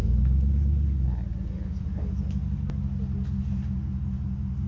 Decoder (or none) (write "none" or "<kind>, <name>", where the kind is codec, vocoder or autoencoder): none